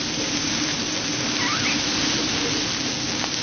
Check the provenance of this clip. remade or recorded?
recorded